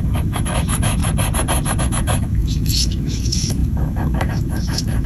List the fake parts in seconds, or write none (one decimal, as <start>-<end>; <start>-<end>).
0.0-1.0; 1.8-5.1